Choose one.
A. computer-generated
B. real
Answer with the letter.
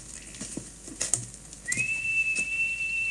B